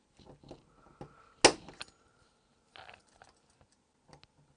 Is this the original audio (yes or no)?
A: yes